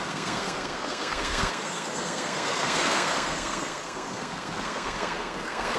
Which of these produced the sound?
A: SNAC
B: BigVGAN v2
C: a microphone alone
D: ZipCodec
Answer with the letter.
A